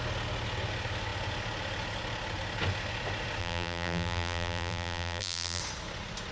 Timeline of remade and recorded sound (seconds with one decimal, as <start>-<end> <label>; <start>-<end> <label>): 0.0-3.4 recorded; 3.4-5.6 remade; 5.6-6.3 recorded